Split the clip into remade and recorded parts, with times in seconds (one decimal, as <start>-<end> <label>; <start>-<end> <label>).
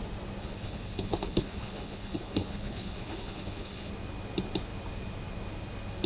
0.0-0.4 recorded; 0.4-3.9 remade; 3.9-6.1 recorded